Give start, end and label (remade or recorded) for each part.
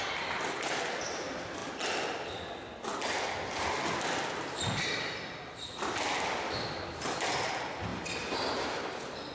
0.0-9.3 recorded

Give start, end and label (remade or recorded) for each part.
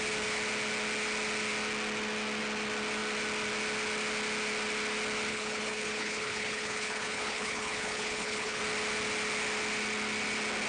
0.0-5.3 recorded; 5.3-8.6 remade; 8.6-10.7 recorded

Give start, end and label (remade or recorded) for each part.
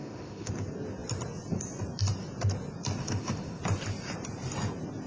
0.0-0.5 remade; 0.5-3.0 recorded; 3.0-3.6 remade; 3.6-5.1 recorded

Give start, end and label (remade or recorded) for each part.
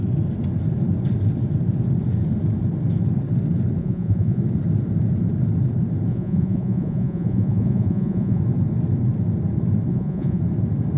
0.0-3.8 recorded; 3.8-4.4 remade; 4.4-6.1 recorded; 6.1-8.4 remade; 8.4-9.9 recorded; 9.9-10.4 remade; 10.4-11.0 recorded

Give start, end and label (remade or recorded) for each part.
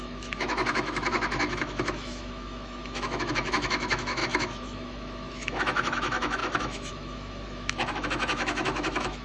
0.0-9.2 remade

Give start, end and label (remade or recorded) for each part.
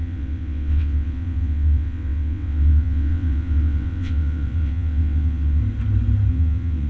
0.0-5.6 remade; 5.6-6.3 recorded; 6.3-6.9 remade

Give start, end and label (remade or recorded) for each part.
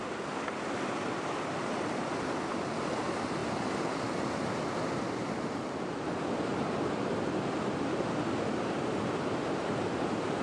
0.0-10.4 recorded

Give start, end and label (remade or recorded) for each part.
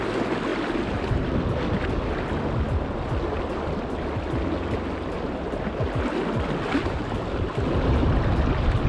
0.0-8.9 recorded